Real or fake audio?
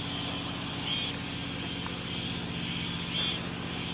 real